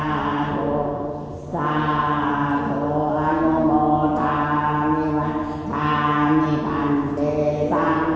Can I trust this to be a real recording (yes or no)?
yes